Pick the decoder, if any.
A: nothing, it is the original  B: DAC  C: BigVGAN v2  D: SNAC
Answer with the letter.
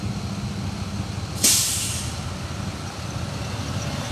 A